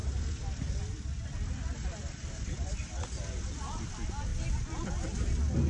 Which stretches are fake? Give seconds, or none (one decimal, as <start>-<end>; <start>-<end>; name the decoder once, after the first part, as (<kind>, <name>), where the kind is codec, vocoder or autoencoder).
2.0-2.8 (vocoder, BigVGAN v2)